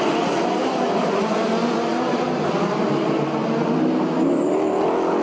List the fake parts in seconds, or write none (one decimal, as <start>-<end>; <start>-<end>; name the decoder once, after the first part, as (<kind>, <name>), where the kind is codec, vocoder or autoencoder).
none